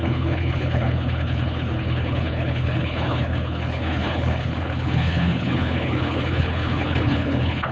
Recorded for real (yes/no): no